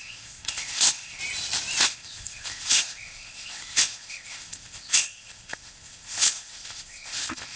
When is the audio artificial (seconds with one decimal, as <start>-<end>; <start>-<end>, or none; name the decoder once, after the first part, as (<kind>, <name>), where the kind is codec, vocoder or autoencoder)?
0.0-1.2 (codec, ZipCodec); 1.8-7.6